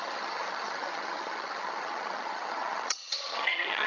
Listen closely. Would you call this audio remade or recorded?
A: remade